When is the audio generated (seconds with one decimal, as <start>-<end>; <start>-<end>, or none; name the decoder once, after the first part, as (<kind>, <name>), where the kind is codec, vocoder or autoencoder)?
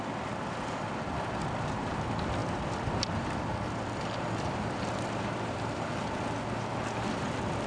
none